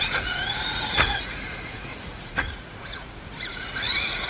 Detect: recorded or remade remade